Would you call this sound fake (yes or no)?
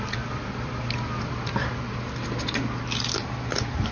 no